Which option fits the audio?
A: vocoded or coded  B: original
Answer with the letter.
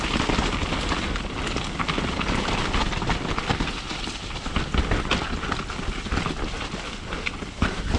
B